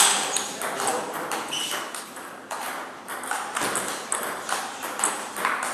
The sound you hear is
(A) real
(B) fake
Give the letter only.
B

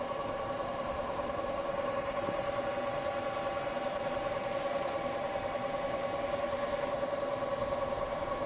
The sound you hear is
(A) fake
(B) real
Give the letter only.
A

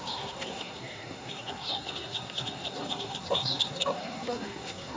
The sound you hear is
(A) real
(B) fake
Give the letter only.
B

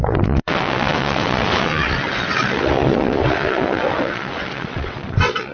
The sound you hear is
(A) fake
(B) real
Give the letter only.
A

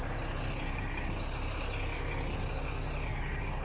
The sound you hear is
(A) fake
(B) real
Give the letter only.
B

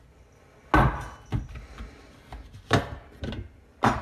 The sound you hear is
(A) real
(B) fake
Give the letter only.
A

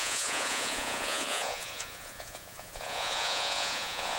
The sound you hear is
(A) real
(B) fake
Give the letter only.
B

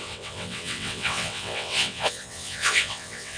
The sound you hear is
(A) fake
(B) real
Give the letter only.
A